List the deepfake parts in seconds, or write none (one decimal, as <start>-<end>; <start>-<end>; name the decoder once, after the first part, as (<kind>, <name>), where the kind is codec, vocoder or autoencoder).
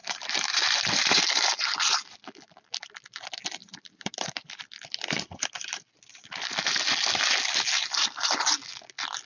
0.0-1.2 (vocoder, BigVGAN v2); 3.6-4.6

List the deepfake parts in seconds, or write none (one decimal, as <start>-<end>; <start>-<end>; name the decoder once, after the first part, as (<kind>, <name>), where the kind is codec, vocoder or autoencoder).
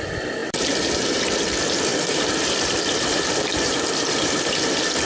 0.4-1.4 (vocoder, BigVGAN v2); 1.9-4.4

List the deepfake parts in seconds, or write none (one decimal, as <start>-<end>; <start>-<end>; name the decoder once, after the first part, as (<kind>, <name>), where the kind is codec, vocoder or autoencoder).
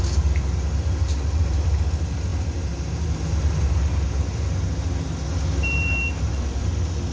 none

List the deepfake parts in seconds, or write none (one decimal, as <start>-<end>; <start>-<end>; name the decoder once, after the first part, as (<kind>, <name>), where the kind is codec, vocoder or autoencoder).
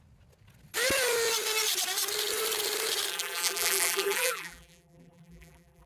3.1-5.9 (vocoder, BigVGAN v2)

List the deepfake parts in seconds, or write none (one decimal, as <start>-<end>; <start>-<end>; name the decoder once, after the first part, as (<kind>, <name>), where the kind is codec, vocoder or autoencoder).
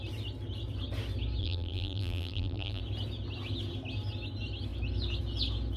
1.4-2.8 (vocoder, BigVGAN v2)